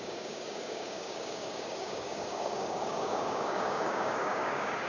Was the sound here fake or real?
fake